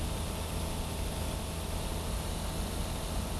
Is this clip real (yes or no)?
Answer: yes